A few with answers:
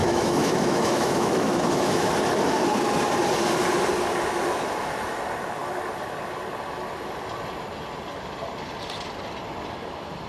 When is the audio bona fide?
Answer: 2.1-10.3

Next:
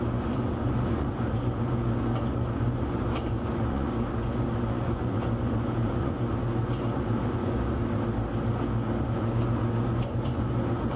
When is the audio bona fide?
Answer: 7.8-9.0